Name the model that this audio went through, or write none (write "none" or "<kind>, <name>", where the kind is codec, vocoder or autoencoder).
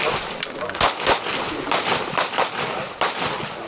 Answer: none